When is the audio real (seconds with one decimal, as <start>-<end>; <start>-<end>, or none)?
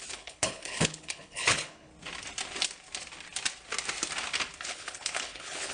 1.9-4.6